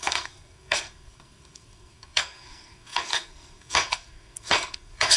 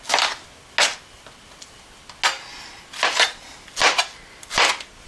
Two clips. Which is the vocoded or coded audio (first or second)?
first